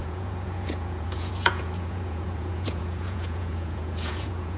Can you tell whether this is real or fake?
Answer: fake